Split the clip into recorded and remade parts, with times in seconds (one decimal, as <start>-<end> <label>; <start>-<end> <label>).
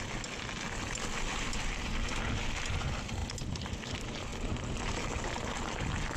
0.0-6.2 recorded